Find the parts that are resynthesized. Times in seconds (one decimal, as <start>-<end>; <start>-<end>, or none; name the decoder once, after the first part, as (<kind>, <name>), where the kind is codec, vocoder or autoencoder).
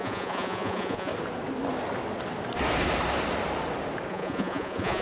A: 0.0-1.1 (vocoder, Vocos); 4.1-5.0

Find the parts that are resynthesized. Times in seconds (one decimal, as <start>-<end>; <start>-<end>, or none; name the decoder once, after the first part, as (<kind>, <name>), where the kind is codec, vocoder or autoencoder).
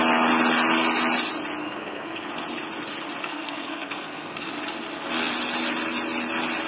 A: 1.6-2.3 (codec, SNAC); 3.2-4.5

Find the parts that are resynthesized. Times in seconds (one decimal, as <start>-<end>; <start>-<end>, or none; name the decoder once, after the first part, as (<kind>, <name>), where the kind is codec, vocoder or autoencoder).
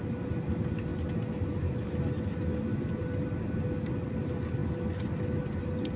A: none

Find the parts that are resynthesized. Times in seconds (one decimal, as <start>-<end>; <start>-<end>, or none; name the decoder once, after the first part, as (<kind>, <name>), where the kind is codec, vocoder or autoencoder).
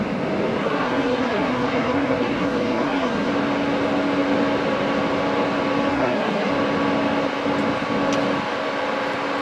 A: 0.6-3.3 (codec, SNAC); 5.9-6.5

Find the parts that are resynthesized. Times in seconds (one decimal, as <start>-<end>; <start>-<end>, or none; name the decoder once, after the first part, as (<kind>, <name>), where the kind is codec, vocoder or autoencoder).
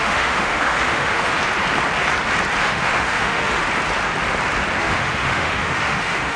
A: 0.0-1.3 (autoencoder, DAC-VAE); 2.6-3.6; 4.8-6.4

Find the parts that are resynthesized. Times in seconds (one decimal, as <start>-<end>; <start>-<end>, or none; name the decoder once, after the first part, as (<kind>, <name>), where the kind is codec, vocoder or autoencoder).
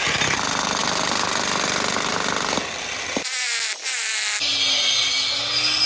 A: none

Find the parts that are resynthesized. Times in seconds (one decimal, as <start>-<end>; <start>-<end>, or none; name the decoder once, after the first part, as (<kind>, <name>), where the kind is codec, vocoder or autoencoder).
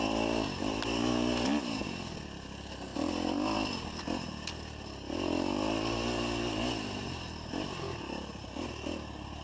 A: none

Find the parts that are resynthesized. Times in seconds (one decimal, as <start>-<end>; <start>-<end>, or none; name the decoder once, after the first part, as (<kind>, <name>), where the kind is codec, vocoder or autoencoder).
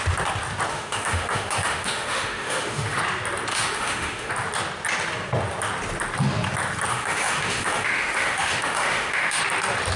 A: 0.7-3.0 (autoencoder, DAC-VAE); 3.5-4.3; 6.9-9.4